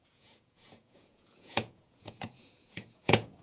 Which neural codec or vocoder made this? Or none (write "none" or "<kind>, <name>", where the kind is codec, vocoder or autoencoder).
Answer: vocoder, Vocos